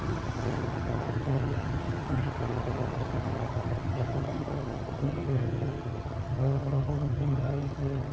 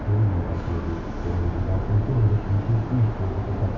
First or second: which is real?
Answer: second